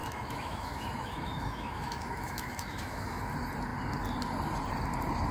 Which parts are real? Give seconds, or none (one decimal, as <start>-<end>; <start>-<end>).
3.2-5.3